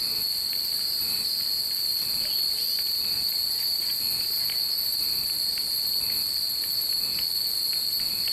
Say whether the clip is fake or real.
real